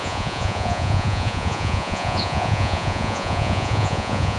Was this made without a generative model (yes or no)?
no